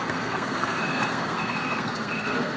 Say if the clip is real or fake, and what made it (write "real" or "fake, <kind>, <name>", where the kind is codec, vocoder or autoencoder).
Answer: fake, codec, SNAC